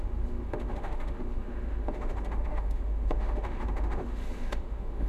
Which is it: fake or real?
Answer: fake